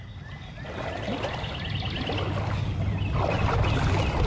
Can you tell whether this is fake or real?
real